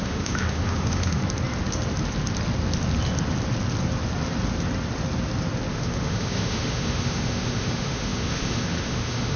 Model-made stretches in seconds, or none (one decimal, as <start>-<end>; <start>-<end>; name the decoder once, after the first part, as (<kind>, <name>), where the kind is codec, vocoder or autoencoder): 0.0-1.2 (autoencoder, DAC-VAE); 5.7-9.4